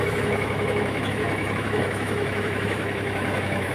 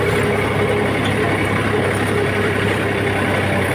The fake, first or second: first